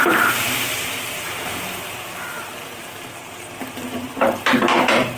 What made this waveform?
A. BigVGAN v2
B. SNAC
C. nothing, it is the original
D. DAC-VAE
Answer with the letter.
A